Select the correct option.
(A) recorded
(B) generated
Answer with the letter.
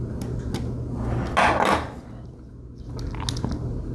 A